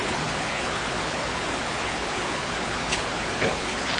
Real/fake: fake